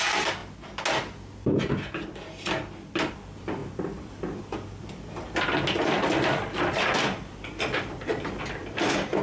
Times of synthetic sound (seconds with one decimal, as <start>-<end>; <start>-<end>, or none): 0.0-0.4; 3.1-9.2